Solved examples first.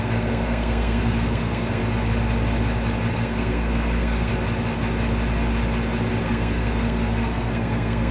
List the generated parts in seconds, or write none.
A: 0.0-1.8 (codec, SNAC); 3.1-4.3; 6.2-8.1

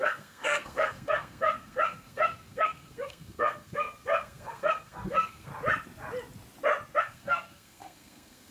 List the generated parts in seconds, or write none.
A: 0.0-5.5 (codec, SNAC); 7.0-8.5

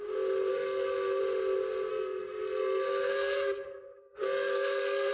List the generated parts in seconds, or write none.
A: 0.5-1.2 (codec, SNAC); 1.9-5.1

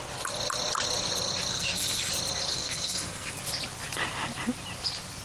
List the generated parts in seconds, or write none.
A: 1.5-2.1 (codec, SNAC); 2.5-3.3

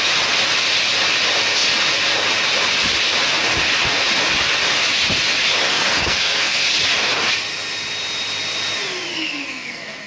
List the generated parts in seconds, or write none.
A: 5.7-6.7 (codec, SNAC); 9.1-10.1

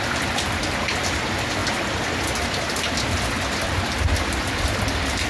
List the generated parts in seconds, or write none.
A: none

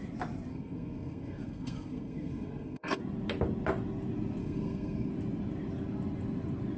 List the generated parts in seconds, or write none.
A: 0.5-3.0 (codec, SNAC); 4.4-5.1